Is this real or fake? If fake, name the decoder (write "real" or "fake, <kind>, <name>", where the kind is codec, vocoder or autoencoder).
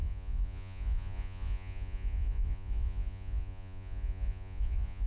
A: fake, vocoder, Vocos